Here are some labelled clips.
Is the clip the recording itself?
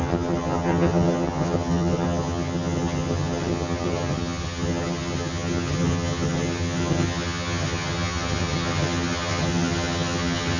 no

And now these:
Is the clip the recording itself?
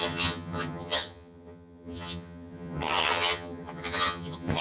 no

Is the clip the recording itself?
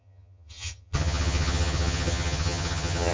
no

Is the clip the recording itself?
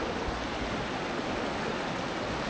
yes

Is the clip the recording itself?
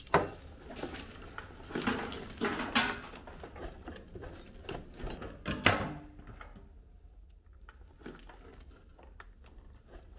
yes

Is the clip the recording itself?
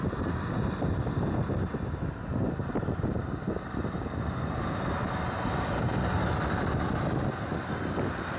yes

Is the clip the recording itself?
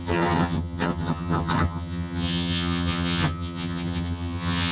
no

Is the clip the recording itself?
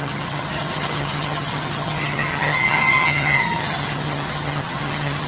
no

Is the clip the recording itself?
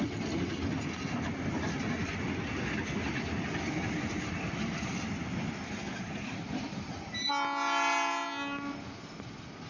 yes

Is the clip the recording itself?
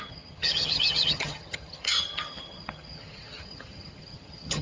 no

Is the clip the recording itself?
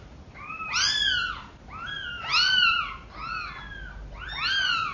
yes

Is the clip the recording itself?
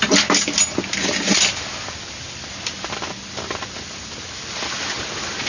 yes